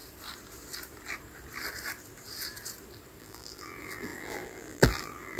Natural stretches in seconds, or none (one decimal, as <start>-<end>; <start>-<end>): 0.0-3.2